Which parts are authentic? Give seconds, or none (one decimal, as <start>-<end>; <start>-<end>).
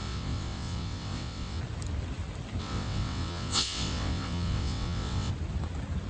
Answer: 1.6-2.6; 5.3-6.1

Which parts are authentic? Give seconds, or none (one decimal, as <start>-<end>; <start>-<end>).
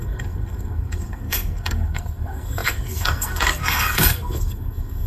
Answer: none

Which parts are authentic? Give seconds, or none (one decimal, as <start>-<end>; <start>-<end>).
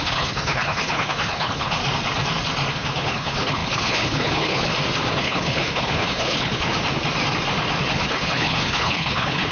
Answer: 1.8-2.7; 4.7-5.2; 6.7-7.9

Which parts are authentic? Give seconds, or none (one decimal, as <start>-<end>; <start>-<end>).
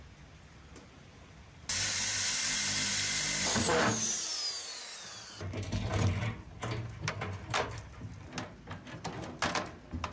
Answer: 0.0-10.1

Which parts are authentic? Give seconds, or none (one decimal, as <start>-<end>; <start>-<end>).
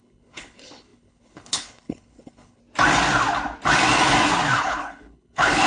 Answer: 2.6-4.6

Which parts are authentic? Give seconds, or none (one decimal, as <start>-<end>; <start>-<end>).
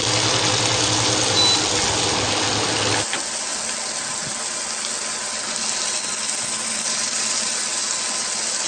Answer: 0.0-8.7